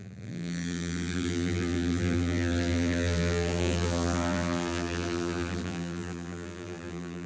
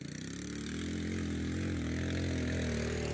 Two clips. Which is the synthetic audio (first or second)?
first